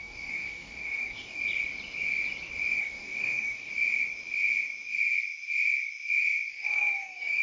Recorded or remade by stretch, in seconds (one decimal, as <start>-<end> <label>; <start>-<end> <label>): 0.0-1.4 remade; 1.4-2.8 recorded; 2.8-3.7 remade; 3.7-6.5 recorded; 6.5-7.4 remade

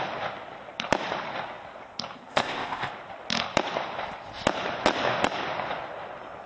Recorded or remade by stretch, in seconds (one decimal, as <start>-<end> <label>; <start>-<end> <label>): 0.0-2.3 recorded; 2.3-2.9 remade; 2.9-6.5 recorded

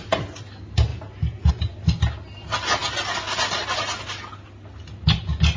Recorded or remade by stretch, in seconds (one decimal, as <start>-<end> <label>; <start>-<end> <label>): 0.0-5.6 recorded

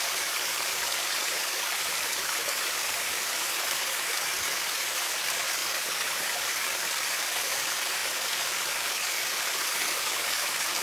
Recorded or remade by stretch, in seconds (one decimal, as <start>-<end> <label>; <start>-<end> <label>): 0.0-10.8 remade